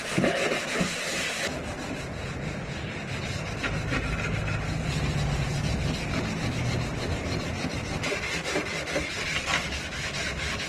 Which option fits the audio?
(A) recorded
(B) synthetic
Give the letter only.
A